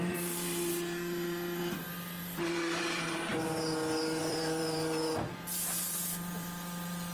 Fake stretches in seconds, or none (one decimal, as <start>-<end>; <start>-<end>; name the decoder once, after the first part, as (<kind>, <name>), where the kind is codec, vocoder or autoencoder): 0.0-1.6 (vocoder, BigVGAN v2); 2.4-3.3; 4.2-7.1